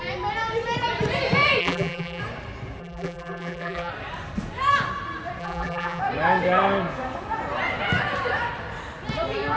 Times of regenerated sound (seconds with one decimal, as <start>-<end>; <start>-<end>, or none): 1.6-2.2; 2.8-3.9; 5.4-6.0